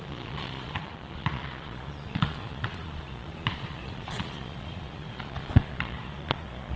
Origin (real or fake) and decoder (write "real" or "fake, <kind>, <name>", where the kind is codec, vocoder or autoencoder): fake, vocoder, Vocos